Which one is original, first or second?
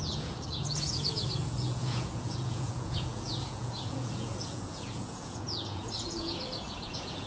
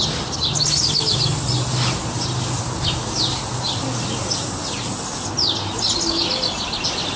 second